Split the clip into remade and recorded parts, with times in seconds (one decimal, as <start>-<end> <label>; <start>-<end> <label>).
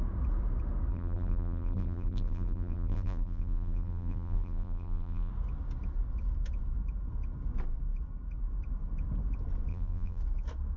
0.0-0.9 recorded; 0.9-5.3 remade; 5.3-9.7 recorded; 9.7-10.2 remade; 10.2-10.8 recorded